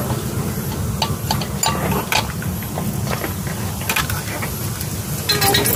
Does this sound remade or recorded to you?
recorded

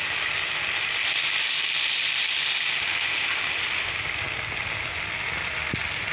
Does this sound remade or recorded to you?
recorded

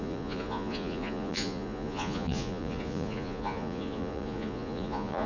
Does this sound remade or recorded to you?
remade